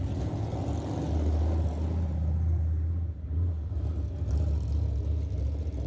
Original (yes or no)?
yes